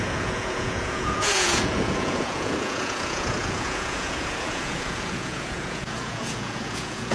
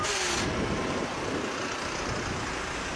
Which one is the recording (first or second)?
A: second